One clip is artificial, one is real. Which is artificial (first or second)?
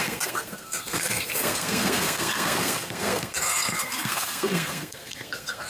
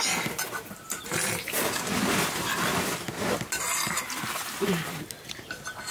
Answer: first